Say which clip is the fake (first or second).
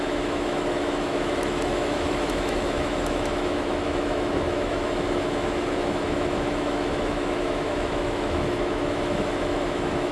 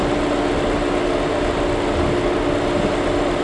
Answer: first